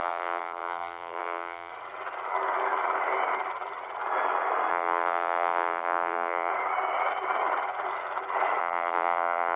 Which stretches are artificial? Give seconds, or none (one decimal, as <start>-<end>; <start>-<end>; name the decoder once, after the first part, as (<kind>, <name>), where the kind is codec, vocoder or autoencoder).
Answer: 0.0-1.7 (vocoder, BigVGAN v2); 4.7-6.5; 8.6-9.6